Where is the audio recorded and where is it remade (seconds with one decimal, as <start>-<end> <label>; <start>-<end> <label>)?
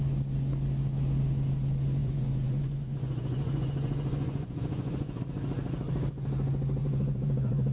0.0-2.0 recorded; 2.0-5.2 remade; 5.2-6.8 recorded; 6.8-7.7 remade